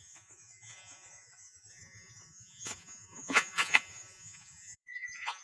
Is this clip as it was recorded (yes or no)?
no